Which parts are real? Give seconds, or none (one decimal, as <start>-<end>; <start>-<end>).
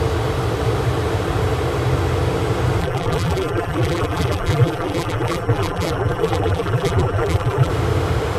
0.0-2.8; 7.7-8.4